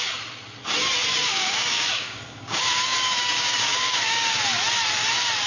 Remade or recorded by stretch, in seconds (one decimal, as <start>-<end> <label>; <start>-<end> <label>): 0.0-1.1 recorded; 1.1-4.4 remade; 4.4-5.5 recorded